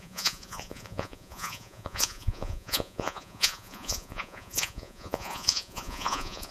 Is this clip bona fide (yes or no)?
no